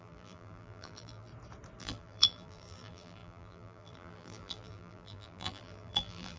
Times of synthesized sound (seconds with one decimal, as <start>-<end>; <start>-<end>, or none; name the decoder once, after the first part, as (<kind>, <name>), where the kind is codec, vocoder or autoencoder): 0.0-1.3 (vocoder, BigVGAN v2); 1.8-6.4